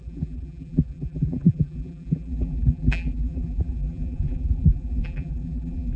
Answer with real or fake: fake